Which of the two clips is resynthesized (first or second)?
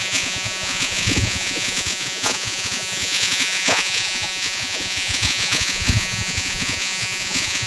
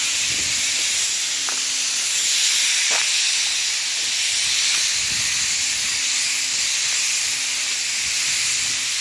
first